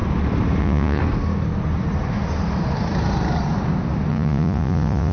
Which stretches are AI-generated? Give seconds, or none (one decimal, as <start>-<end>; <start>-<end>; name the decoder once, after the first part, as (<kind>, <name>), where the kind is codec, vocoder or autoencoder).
0.6-1.0 (vocoder, Vocos); 4.1-5.1